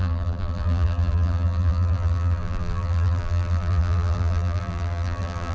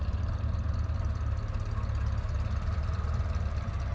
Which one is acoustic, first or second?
second